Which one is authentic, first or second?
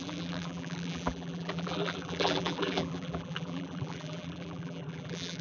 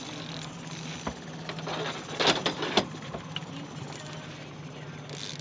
second